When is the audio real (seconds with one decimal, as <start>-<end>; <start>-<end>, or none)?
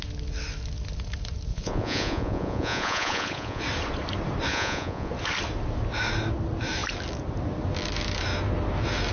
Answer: 0.0-1.5; 3.6-4.5; 5.1-9.1